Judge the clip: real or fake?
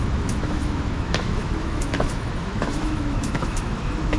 fake